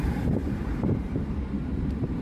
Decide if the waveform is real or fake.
fake